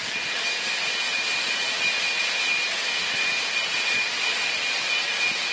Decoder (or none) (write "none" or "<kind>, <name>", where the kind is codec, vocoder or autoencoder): none